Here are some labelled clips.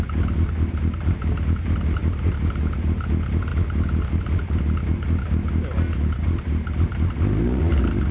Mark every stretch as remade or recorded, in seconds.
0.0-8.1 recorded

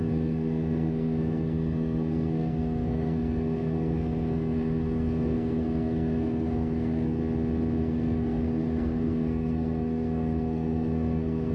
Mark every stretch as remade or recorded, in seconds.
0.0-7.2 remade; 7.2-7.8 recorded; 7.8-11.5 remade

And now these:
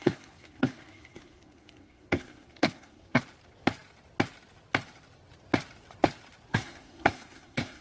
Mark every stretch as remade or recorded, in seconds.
0.0-3.2 remade; 3.2-6.5 recorded; 6.5-7.8 remade